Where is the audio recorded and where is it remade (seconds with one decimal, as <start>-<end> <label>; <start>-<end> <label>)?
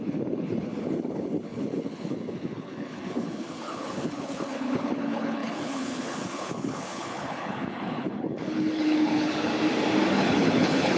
0.0-9.5 remade; 9.5-10.1 recorded; 10.1-11.0 remade